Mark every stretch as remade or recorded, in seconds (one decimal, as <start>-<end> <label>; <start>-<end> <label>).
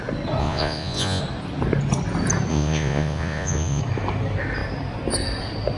0.0-0.4 recorded; 0.4-1.2 remade; 1.2-2.5 recorded; 2.5-3.8 remade; 3.8-5.8 recorded